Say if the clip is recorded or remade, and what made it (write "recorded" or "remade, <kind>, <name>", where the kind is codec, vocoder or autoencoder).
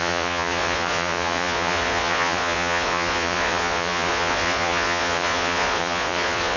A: remade, vocoder, Vocos